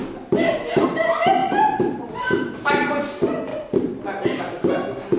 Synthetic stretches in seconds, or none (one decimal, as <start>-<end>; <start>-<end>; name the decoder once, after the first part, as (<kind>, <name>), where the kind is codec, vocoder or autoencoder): 1.4-2.7 (vocoder, BigVGAN v2); 3.5-4.4